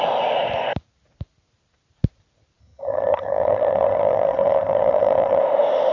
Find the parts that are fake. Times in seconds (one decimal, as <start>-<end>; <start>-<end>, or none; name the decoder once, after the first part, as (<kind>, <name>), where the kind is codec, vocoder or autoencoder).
2.6-5.4 (vocoder, HiFi-GAN)